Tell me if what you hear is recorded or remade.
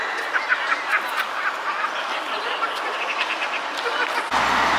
recorded